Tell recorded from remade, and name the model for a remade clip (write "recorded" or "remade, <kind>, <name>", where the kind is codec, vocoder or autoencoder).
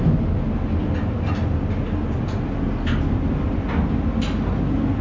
recorded